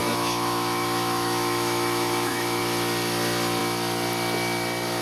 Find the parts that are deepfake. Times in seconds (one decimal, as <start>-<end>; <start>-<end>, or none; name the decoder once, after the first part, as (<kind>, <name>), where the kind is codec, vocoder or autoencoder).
0.0-2.6 (autoencoder, DAC-VAE)